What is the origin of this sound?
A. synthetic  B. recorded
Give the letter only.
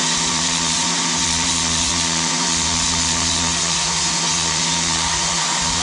A